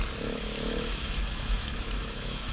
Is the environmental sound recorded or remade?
remade